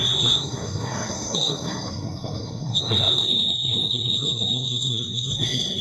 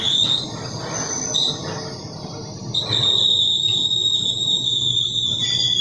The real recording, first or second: second